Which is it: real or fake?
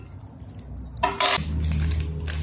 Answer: real